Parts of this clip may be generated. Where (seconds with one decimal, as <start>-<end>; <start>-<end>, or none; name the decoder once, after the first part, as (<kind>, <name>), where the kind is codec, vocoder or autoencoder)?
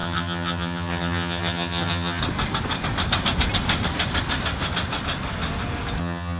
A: 0.0-2.2 (vocoder, HiFi-GAN); 6.0-6.4